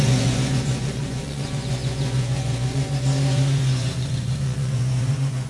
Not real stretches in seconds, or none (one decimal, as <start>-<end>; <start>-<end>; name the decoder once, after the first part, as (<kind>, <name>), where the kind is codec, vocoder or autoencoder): 0.0-5.5 (vocoder, Vocos)